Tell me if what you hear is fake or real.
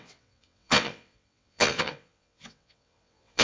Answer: fake